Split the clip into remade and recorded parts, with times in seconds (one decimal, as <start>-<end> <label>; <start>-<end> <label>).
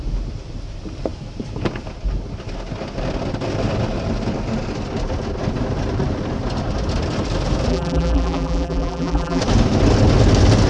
0.0-7.7 recorded; 7.7-9.4 remade; 9.4-10.7 recorded